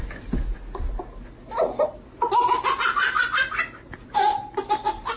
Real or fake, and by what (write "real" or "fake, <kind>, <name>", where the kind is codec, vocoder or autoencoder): real